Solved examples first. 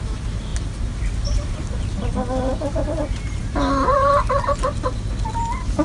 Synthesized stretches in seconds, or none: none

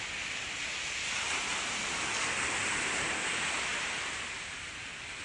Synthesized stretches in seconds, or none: none

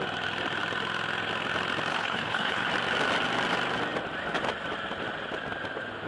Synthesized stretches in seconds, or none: 1.9-2.7

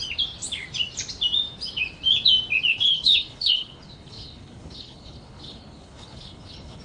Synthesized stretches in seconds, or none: 2.7-6.8

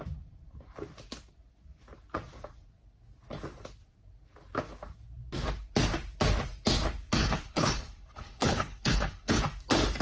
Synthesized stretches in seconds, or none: 7.2-9.4